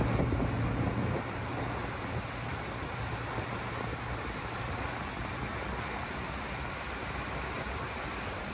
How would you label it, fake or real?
real